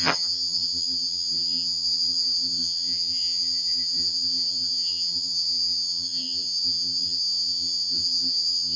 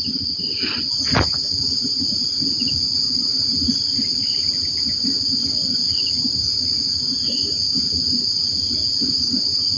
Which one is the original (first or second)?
second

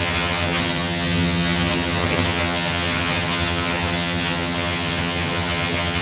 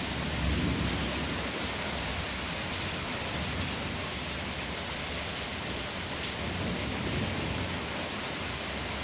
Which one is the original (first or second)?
second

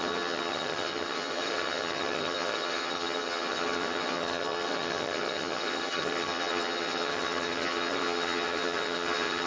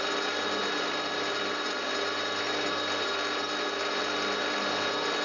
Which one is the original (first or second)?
second